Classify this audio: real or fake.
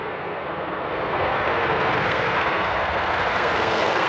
fake